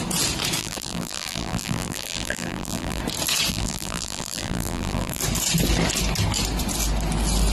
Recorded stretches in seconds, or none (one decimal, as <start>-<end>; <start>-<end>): 0.0-0.6; 3.0-3.5; 5.2-7.5